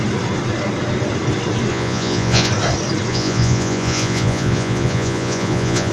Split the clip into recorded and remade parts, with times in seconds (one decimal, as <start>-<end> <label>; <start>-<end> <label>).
0.0-1.7 recorded; 1.7-2.5 remade; 2.5-3.1 recorded; 3.1-5.9 remade